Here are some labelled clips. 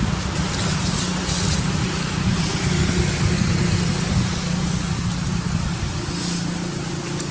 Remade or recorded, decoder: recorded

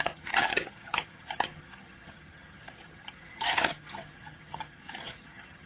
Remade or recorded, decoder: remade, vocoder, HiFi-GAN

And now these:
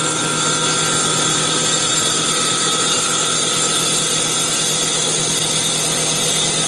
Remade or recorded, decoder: recorded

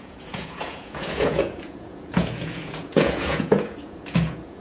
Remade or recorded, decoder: remade, vocoder, Vocos